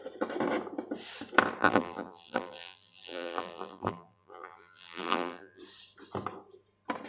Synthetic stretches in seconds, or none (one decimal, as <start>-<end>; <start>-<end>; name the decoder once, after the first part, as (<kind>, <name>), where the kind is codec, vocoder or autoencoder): 1.6-5.6 (vocoder, BigVGAN v2)